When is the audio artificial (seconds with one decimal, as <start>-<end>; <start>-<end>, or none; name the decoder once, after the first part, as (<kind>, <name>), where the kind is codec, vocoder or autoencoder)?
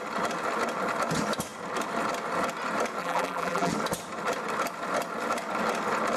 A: 3.0-3.7 (vocoder, BigVGAN v2)